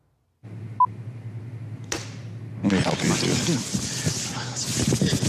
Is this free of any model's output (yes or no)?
yes